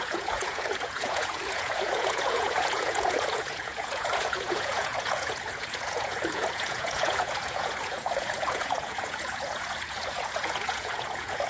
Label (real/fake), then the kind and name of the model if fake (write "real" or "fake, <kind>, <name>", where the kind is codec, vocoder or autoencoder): fake, vocoder, Vocos